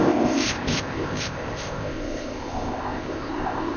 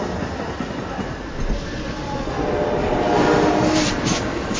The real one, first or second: second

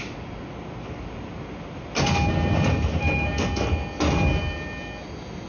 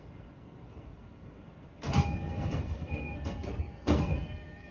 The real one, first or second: first